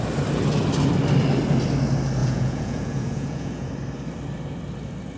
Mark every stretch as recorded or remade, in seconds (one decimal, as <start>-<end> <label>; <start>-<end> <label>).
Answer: 0.0-2.2 recorded; 2.2-3.7 remade; 3.7-5.2 recorded

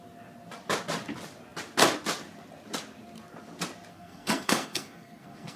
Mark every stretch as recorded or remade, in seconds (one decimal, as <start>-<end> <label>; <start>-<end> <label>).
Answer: 0.0-3.9 recorded; 3.9-5.6 remade

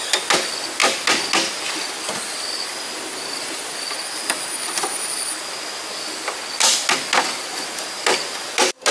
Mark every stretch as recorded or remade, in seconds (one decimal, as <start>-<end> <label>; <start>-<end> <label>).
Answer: 0.0-8.9 recorded